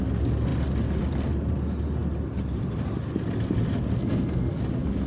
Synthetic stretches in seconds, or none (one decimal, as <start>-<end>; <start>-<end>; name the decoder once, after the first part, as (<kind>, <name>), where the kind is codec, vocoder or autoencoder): 4.0-4.6 (codec, SNAC)